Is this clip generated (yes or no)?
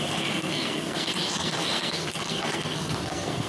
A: yes